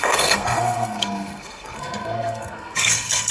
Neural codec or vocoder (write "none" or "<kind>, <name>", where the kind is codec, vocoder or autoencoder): codec, SNAC